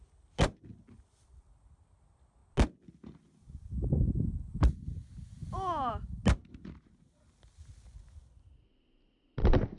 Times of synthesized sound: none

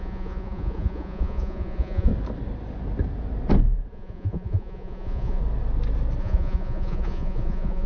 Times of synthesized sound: 0.0-2.1 (vocoder, Vocos); 3.9-5.4; 6.2-7.9

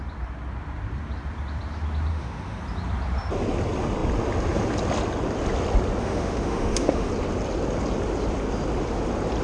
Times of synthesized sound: 2.1-2.6 (autoencoder, DAC-VAE); 6.0-7.1

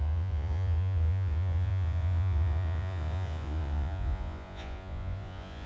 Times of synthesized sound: 0.0-5.7 (vocoder, Vocos)

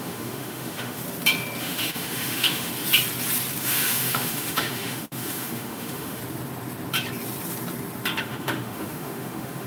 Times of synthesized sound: 0.0-1.0 (autoencoder, DAC-VAE); 1.6-2.7; 3.6-6.2; 8.2-9.7